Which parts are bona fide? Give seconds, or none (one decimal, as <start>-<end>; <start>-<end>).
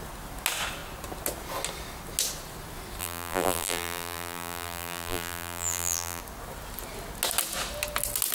0.0-3.0; 6.2-8.3